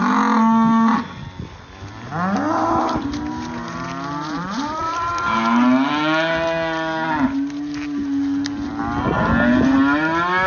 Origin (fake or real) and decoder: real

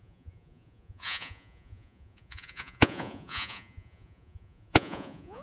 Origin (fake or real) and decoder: fake, vocoder, Vocos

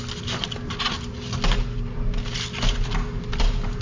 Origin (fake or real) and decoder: real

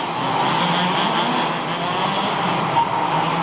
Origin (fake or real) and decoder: real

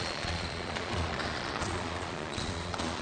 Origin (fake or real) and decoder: fake, vocoder, Vocos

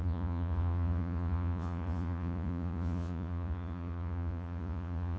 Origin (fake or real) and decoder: fake, vocoder, Vocos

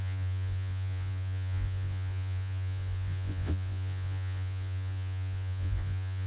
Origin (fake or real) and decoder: fake, vocoder, Vocos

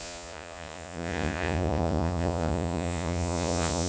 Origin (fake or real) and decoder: fake, vocoder, Vocos